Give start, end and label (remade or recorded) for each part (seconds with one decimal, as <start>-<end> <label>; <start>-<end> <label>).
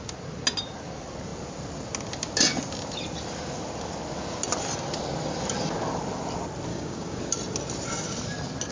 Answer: 0.0-6.7 recorded; 6.7-7.2 remade; 7.2-8.7 recorded